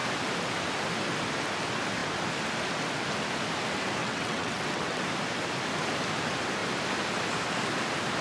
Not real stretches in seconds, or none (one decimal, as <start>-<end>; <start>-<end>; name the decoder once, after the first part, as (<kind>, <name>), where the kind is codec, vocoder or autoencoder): 4.0-5.0 (vocoder, WaveNeXt)

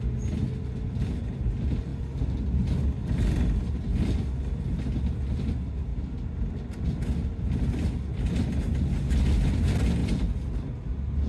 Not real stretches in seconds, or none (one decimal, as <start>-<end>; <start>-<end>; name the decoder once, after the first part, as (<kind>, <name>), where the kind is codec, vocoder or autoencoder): none

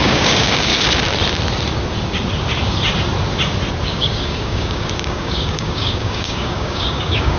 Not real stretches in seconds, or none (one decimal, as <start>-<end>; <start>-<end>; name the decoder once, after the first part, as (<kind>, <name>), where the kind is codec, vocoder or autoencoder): 0.0-0.7 (codec, DAC); 3.8-7.4

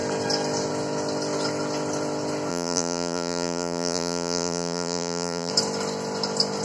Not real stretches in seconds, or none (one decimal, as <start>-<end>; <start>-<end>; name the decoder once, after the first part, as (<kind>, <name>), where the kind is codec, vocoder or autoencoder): 2.5-5.5 (vocoder, BigVGAN v2)

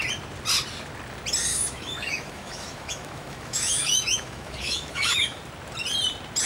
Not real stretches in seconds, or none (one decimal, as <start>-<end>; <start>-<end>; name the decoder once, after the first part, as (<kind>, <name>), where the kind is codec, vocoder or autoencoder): 1.5-5.4 (autoencoder, DAC-VAE)

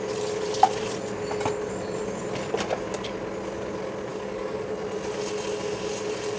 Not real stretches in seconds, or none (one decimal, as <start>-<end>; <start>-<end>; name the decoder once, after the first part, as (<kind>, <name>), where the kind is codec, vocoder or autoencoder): 4.1-4.7 (codec, DAC)

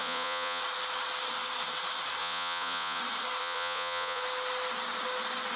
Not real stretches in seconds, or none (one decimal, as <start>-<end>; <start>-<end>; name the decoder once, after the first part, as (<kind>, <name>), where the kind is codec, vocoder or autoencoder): 0.0-0.6 (vocoder, Vocos); 2.2-3.0; 3.4-4.2

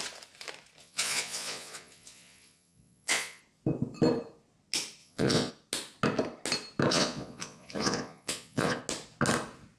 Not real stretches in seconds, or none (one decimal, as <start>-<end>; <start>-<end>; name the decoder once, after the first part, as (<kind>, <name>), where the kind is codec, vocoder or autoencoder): 0.8-3.4 (vocoder, Vocos); 5.0-5.5; 6.9-8.8